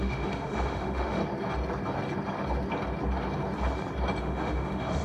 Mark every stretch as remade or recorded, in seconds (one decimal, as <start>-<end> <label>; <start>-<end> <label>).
0.0-1.2 remade; 1.2-4.2 recorded; 4.2-5.0 remade